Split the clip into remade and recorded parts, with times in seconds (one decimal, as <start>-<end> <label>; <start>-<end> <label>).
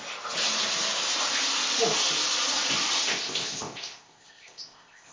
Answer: 0.0-3.1 recorded; 3.1-5.1 remade